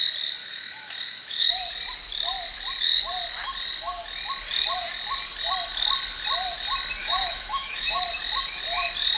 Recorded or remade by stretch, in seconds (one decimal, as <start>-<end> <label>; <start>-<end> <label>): 0.0-0.4 recorded; 0.4-1.5 remade; 1.5-7.0 recorded; 7.0-8.0 remade; 8.0-9.2 recorded